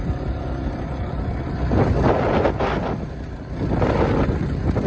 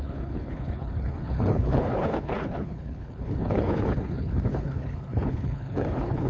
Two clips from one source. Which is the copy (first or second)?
second